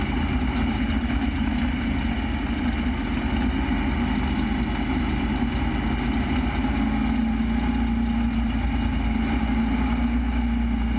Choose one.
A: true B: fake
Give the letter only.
A